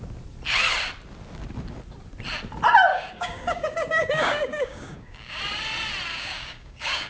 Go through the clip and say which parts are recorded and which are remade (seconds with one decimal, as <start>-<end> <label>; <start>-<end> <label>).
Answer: 0.0-2.9 recorded; 2.9-5.4 remade; 5.4-6.1 recorded; 6.1-7.1 remade